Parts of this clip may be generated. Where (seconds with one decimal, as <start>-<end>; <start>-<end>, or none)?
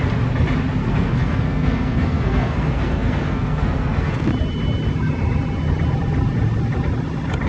0.8-4.1